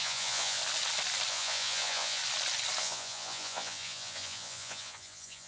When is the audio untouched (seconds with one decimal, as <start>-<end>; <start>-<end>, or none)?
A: 0.6-1.3; 2.2-2.8